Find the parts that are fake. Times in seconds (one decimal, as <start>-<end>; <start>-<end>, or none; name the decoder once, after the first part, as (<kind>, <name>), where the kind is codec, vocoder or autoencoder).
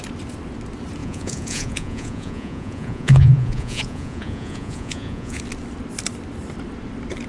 1.0-5.4 (vocoder, Vocos)